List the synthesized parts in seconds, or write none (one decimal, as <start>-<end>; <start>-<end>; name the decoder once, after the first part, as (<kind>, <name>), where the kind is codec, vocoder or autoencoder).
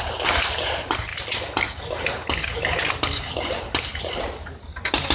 none